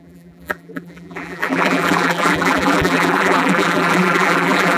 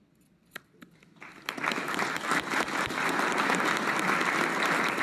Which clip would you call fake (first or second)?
first